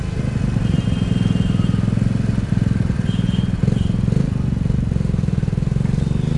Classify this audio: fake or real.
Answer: real